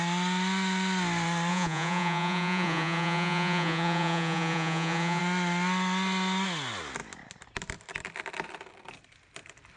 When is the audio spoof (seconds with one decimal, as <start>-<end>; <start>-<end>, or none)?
1.5-5.2